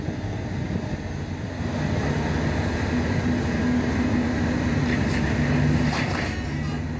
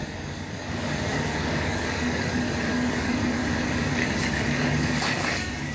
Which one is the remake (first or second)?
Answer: second